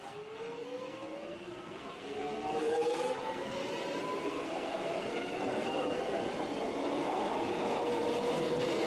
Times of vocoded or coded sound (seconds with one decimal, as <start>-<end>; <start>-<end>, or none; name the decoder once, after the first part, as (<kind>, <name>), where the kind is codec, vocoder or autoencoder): 0.0-3.6 (codec, SNAC); 4.2-6.2; 6.8-8.9